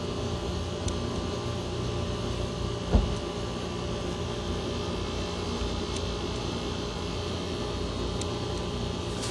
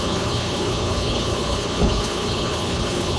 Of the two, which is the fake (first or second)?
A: second